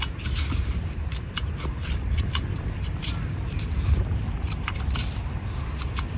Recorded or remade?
remade